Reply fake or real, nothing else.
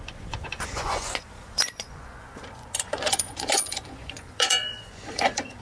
fake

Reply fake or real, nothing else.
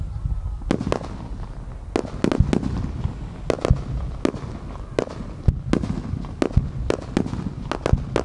real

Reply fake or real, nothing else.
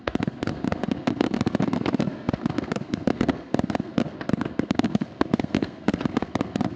fake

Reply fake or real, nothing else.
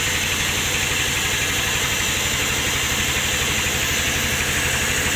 real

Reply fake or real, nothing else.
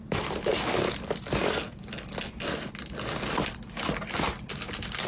real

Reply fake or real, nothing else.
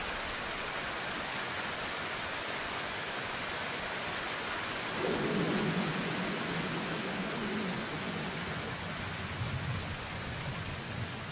fake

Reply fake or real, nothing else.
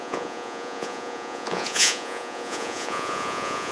fake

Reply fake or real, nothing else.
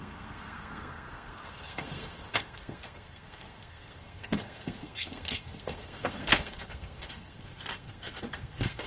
fake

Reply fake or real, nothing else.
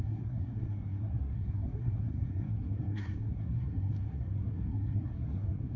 fake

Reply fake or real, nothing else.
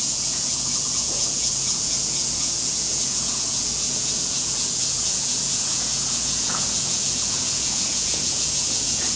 fake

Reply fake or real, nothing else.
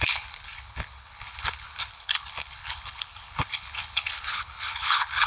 fake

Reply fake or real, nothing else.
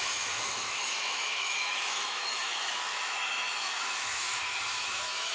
fake